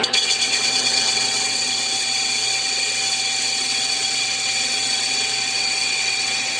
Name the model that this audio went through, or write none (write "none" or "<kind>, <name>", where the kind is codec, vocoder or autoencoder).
vocoder, WaveNeXt